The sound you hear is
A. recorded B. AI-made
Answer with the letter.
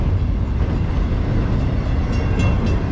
A